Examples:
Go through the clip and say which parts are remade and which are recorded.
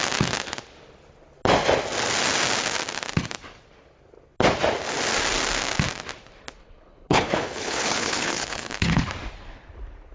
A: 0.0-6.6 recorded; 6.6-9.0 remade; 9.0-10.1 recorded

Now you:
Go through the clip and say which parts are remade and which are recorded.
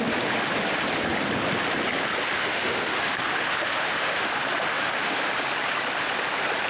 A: 0.0-2.4 recorded; 2.4-4.3 remade; 4.3-4.7 recorded; 4.7-5.3 remade; 5.3-6.7 recorded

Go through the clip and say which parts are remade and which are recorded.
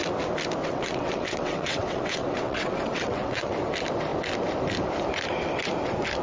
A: 0.0-0.6 recorded; 0.6-3.5 remade; 3.5-6.2 recorded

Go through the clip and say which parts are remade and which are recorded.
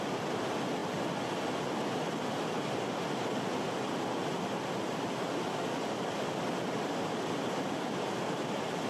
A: 0.0-8.9 recorded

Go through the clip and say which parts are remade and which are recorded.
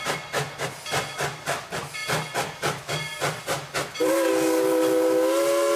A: 0.0-5.8 recorded